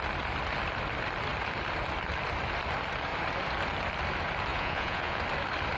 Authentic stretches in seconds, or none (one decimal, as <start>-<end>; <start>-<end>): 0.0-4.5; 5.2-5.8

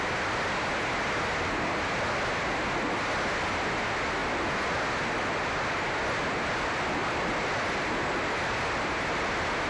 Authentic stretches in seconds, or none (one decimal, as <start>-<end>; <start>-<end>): 0.0-9.7

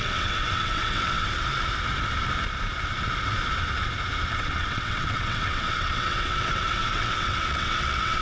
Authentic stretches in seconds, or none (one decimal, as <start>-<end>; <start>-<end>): 1.4-4.3